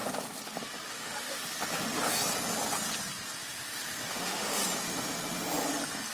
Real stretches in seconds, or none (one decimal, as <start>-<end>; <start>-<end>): 0.0-0.9; 1.4-4.1; 4.6-6.1